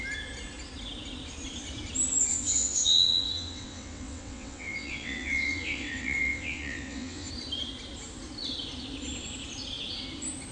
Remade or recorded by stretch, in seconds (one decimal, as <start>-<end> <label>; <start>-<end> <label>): 0.0-2.3 recorded; 2.3-7.3 remade; 7.3-10.5 recorded